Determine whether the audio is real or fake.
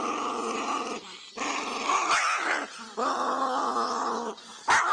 real